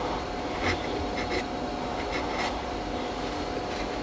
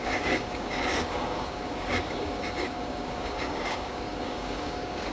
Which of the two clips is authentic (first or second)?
first